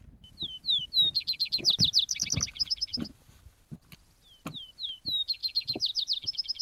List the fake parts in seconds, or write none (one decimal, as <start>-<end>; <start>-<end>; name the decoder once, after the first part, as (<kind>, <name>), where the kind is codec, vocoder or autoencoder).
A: 5.4-6.0 (vocoder, BigVGAN v2)